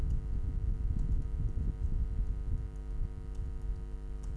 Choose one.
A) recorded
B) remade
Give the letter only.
A